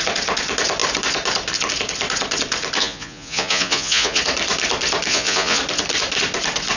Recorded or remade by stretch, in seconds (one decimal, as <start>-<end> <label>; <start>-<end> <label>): 0.0-2.8 recorded; 2.8-4.2 remade; 4.2-5.1 recorded; 5.1-5.6 remade; 5.6-6.8 recorded